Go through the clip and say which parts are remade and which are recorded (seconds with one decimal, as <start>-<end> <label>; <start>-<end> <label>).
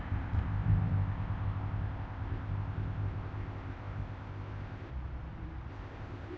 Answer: 0.0-4.9 remade; 4.9-5.7 recorded; 5.7-6.4 remade